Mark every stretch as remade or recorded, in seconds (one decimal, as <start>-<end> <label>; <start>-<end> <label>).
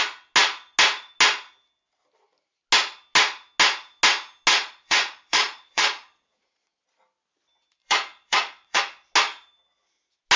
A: 0.0-4.5 recorded; 4.5-6.9 remade; 6.9-7.8 recorded; 7.8-8.8 remade; 8.8-10.4 recorded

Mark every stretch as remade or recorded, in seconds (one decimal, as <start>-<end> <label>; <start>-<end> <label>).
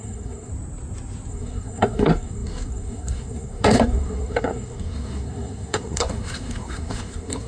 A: 0.0-0.5 remade; 0.5-1.3 recorded; 1.3-7.5 remade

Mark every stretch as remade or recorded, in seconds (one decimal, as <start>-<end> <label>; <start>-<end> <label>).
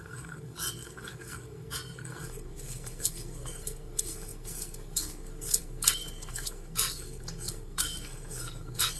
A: 0.0-9.0 remade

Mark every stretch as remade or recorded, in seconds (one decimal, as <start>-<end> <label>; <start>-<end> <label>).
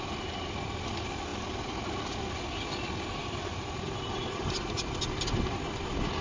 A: 0.0-3.2 recorded; 3.2-5.6 remade; 5.6-6.2 recorded